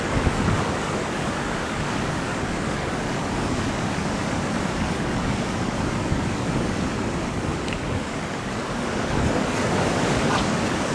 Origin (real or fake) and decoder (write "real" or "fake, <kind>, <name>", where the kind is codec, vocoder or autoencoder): fake, codec, DAC